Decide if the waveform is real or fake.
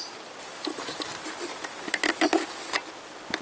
real